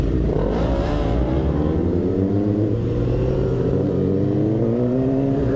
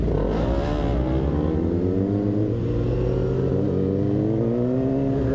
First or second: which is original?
second